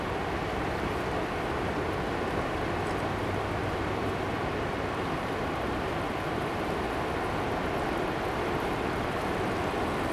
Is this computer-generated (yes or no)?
no